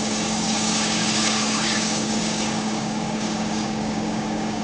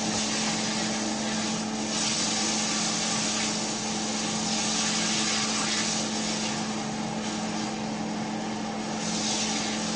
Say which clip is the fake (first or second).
first